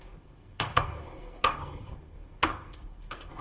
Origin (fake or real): fake